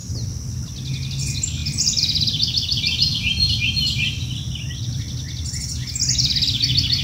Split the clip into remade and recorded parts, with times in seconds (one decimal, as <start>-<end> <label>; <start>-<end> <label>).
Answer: 0.0-7.0 recorded